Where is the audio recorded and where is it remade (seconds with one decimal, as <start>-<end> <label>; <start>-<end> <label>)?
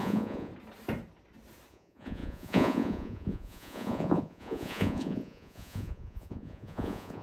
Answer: 0.0-0.5 remade; 0.5-1.7 recorded; 1.7-7.2 remade